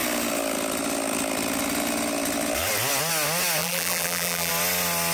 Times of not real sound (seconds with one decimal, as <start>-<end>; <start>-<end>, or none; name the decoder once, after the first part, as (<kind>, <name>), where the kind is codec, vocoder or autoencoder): 3.6-4.5 (vocoder, BigVGAN v2)